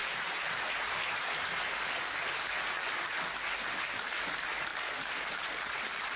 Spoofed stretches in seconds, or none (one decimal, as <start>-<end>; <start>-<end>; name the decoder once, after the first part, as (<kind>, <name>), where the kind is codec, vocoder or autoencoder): 0.0-0.7 (vocoder, BigVGAN v2); 4.7-6.2